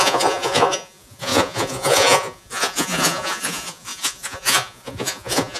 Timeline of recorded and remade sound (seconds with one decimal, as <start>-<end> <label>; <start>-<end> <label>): 0.0-5.6 remade